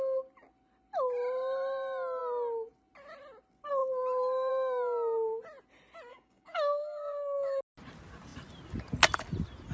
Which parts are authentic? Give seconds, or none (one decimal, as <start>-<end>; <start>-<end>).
0.0-6.1; 7.6-9.7